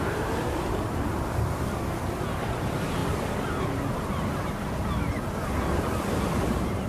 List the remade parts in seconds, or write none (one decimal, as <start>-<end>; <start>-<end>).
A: 0.0-6.9